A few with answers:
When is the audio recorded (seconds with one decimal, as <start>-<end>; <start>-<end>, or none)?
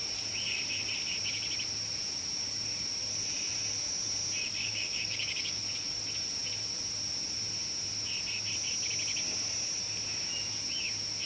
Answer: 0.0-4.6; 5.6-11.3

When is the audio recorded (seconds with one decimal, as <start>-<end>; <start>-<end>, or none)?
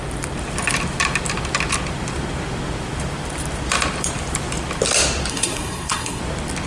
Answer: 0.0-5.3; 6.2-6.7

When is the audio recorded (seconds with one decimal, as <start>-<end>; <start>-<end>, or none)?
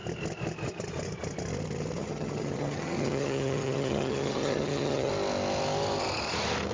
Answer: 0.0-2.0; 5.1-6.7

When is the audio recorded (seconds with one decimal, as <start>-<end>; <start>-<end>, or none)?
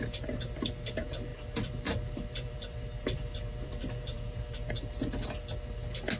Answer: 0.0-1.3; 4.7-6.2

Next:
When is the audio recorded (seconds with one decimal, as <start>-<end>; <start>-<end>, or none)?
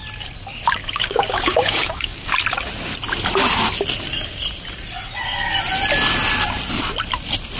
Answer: 0.0-0.8; 2.3-7.6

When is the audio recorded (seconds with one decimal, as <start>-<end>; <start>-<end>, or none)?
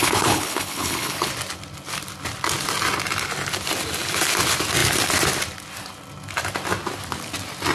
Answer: 1.3-7.7